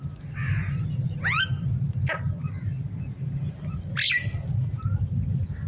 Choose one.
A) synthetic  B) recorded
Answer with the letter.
B